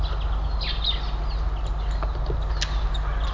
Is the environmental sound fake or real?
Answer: real